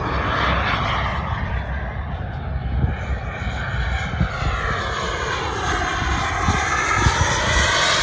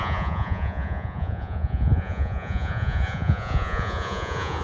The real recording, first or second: first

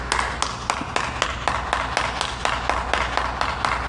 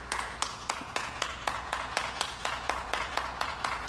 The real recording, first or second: first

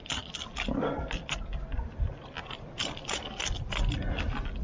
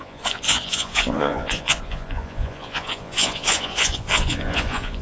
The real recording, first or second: first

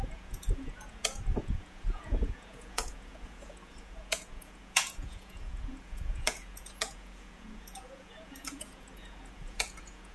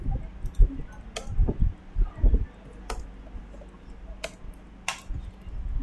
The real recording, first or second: second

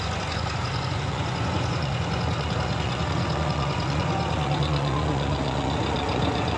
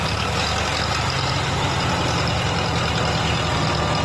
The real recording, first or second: second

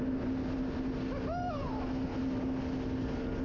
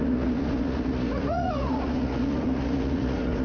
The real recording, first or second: first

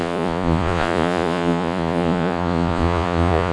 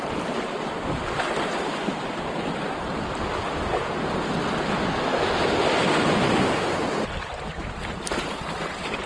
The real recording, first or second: second